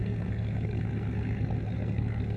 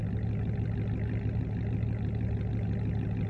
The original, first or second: second